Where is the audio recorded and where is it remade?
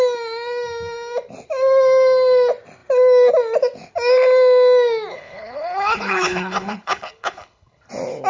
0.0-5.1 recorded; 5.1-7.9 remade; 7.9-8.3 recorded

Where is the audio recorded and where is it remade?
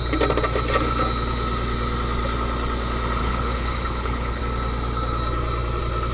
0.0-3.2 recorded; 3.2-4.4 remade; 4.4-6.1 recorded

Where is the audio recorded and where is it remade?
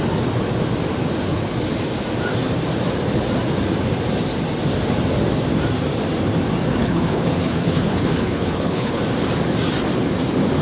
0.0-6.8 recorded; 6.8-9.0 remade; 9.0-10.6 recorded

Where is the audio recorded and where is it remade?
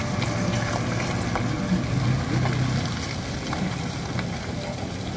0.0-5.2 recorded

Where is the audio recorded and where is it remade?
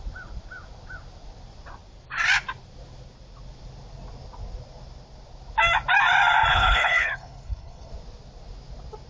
0.0-6.5 recorded; 6.5-7.9 remade; 7.9-9.1 recorded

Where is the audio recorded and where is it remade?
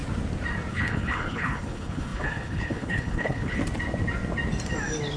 0.0-0.7 recorded; 0.7-3.6 remade; 3.6-5.2 recorded